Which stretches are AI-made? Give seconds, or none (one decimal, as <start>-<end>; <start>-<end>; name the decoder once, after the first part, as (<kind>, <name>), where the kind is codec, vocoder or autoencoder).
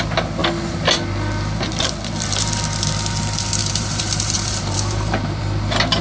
3.6-5.4 (vocoder, BigVGAN v2)